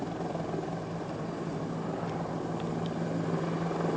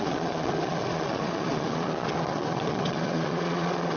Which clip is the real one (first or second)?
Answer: first